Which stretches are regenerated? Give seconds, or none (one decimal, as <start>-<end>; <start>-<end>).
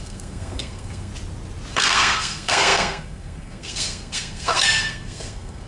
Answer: 0.0-1.1; 1.7-5.7